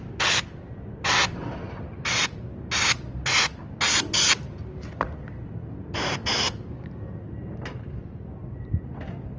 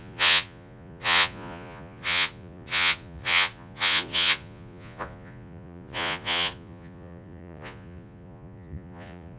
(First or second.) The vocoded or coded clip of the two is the second